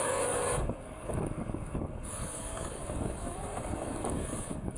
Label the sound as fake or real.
fake